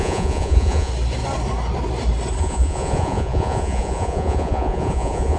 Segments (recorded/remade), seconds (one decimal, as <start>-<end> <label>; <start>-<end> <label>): 0.0-0.9 remade; 0.9-2.4 recorded; 2.4-5.4 remade